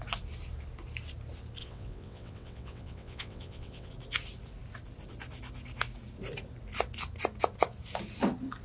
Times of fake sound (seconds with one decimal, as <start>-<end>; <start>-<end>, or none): 1.6-3.9